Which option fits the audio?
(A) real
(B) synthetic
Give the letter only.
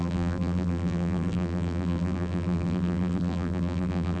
B